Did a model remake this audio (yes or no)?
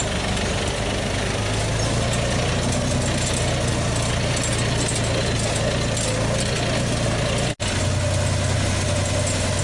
no